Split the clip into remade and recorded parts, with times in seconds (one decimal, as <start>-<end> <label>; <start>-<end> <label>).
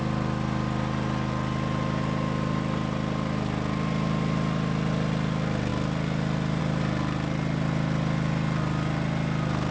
0.0-9.7 recorded